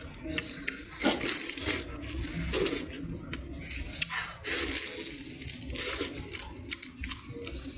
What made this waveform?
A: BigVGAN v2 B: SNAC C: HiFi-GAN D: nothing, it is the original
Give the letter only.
D